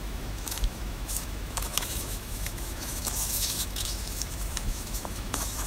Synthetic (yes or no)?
yes